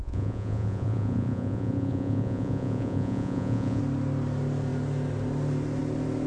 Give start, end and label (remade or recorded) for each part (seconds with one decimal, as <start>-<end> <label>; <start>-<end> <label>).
0.0-3.8 remade; 3.8-6.3 recorded